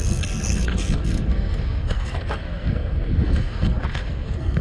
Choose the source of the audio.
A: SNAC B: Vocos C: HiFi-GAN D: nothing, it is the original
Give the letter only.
A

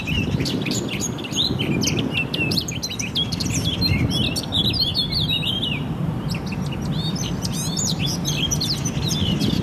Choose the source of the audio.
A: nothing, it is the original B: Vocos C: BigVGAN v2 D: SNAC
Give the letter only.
C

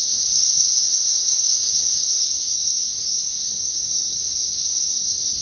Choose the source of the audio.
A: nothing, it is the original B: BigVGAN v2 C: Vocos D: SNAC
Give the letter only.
D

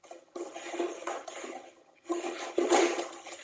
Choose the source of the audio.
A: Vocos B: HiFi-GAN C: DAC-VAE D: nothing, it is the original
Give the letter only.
B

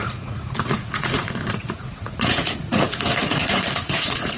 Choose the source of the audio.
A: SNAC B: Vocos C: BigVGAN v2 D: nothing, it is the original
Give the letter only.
B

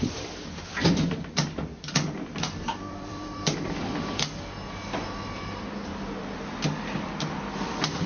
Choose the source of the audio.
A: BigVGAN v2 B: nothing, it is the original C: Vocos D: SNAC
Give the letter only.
A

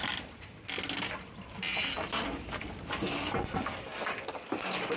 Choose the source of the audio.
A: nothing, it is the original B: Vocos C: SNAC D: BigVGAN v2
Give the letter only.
A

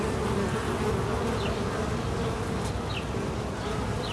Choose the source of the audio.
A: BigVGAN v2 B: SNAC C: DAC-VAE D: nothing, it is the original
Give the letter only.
D